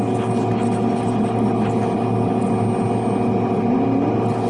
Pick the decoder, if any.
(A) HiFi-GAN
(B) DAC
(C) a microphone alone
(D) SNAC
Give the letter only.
C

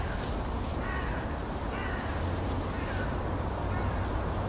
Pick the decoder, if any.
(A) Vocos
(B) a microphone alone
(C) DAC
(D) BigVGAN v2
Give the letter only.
B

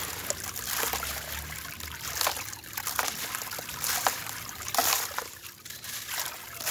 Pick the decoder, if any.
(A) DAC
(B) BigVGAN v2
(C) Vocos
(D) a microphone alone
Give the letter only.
D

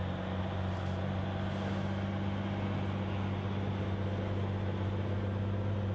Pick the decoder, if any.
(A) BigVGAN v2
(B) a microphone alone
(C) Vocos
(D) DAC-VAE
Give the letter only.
B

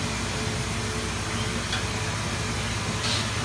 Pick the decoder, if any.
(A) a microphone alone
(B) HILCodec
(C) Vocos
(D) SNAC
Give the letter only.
A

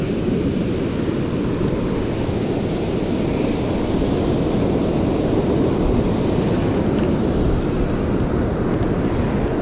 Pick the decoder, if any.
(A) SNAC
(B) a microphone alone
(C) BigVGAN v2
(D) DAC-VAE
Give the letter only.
B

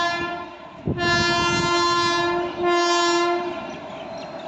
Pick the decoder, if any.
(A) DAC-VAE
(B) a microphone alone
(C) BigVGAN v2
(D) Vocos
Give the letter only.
B